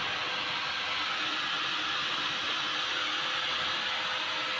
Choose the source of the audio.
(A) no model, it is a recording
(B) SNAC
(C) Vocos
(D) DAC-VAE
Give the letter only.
A